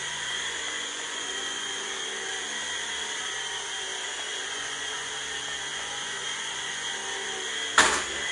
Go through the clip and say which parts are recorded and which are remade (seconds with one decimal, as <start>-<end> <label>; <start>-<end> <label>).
0.0-1.9 remade; 1.9-4.3 recorded; 4.3-5.1 remade; 5.1-5.7 recorded; 5.7-6.9 remade; 6.9-8.3 recorded